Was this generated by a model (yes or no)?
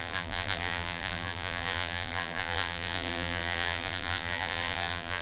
yes